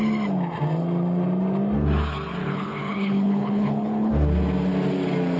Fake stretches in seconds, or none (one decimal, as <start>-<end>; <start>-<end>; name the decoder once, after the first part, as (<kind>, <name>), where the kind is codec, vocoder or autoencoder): 2.4-4.1 (codec, HILCodec)